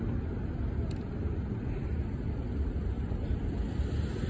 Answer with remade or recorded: recorded